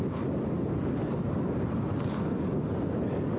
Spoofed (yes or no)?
yes